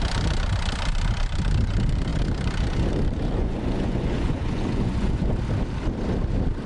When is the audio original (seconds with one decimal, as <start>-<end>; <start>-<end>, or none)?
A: 0.0-3.4; 5.3-6.7